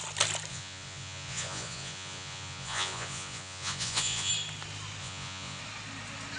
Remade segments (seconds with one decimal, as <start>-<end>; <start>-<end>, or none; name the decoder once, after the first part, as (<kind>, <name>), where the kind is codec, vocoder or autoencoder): 0.5-4.3 (vocoder, Vocos); 5.0-5.6